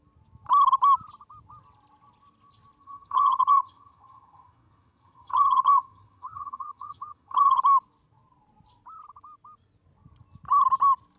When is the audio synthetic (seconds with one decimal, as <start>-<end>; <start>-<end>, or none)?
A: 2.8-7.6